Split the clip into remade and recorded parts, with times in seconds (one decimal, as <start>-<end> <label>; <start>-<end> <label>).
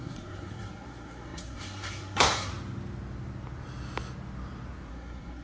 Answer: 0.0-2.5 remade; 2.5-4.9 recorded; 4.9-5.4 remade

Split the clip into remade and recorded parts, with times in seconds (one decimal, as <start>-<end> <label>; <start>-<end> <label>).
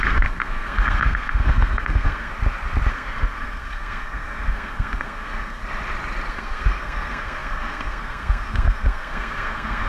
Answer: 0.0-2.3 remade; 2.3-2.9 recorded; 2.9-5.6 remade; 5.6-6.3 recorded; 6.3-9.9 remade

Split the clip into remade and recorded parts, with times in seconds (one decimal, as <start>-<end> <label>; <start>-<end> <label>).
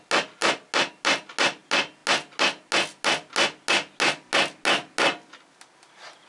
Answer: 0.0-6.3 recorded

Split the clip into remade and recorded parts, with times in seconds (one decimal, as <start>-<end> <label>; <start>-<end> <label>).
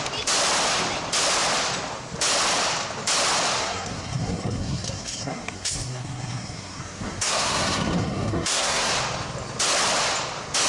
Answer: 0.0-3.6 recorded; 3.6-8.9 remade; 8.9-10.7 recorded